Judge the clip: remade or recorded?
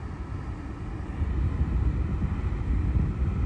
recorded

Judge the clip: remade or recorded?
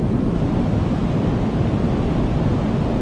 recorded